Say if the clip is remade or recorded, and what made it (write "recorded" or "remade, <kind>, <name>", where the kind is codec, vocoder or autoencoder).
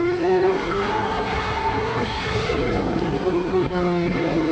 remade, codec, SNAC